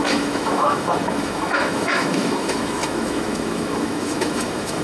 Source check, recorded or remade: remade